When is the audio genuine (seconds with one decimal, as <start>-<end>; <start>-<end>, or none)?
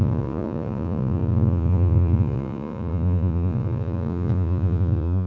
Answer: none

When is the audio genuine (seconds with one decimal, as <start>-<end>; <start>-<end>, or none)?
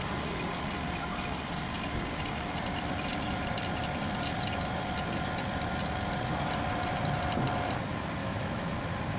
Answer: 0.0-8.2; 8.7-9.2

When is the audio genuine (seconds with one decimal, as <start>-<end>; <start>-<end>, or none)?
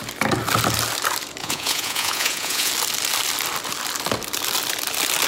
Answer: 0.0-1.4; 2.7-5.3